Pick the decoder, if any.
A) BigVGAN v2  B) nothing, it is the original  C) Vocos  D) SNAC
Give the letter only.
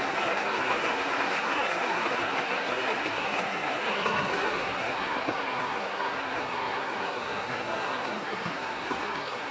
D